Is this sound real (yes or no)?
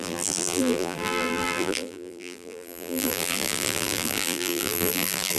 no